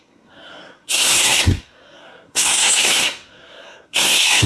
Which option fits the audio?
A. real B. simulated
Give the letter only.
B